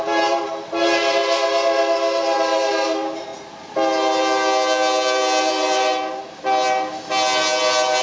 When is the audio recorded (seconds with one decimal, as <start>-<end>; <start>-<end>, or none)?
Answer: 3.3-5.4; 6.2-8.0